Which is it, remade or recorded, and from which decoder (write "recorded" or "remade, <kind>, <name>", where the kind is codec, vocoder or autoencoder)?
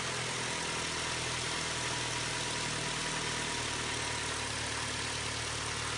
recorded